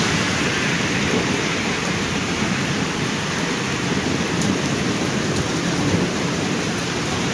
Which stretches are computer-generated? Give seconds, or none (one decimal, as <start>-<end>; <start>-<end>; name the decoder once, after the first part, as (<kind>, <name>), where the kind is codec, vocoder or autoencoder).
0.0-1.8 (vocoder, BigVGAN v2); 5.4-7.3